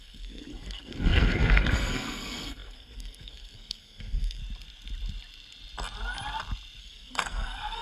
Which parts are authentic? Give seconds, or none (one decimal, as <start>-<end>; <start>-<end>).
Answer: 4.4-6.8